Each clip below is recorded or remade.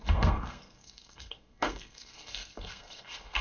remade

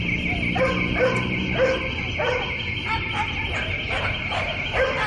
recorded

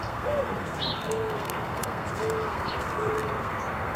remade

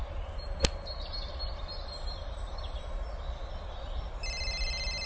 recorded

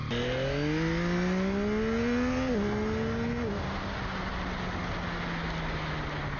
recorded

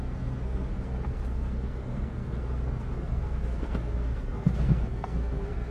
remade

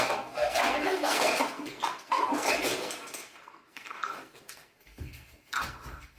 remade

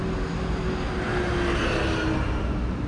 recorded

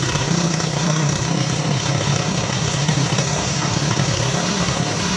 remade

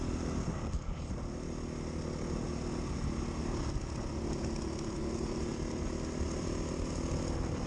recorded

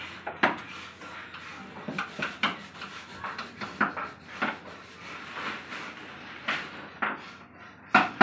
recorded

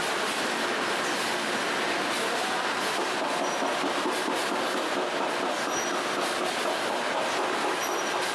recorded